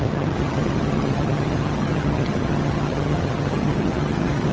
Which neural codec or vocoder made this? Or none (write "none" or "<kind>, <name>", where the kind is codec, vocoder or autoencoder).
vocoder, HiFi-GAN